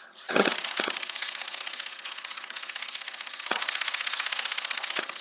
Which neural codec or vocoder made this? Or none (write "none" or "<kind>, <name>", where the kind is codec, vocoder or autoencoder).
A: vocoder, HiFi-GAN